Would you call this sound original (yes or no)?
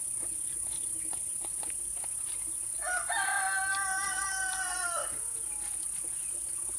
yes